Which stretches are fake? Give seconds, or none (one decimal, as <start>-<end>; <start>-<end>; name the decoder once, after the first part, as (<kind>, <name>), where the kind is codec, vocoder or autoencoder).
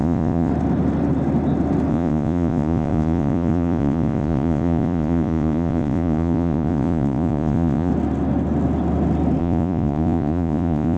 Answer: 0.0-0.5 (vocoder, Vocos); 1.9-7.9; 9.4-11.0